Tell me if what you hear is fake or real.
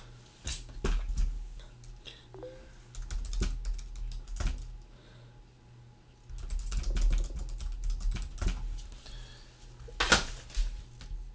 real